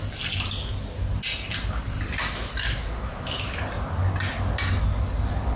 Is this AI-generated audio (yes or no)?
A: no